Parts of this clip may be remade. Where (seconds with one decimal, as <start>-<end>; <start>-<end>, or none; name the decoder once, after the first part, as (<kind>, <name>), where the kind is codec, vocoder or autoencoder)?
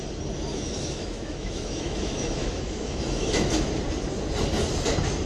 0.5-3.7 (autoencoder, DAC-VAE)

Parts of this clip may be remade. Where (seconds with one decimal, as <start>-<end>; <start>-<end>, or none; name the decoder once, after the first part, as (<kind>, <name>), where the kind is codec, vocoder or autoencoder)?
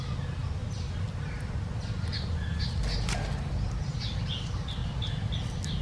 none